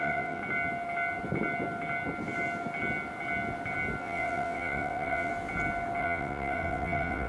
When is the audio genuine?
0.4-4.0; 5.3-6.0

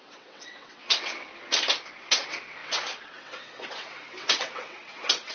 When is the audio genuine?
1.3-1.9